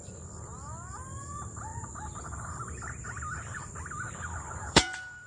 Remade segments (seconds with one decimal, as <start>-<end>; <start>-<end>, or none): 0.0-1.7; 2.2-5.3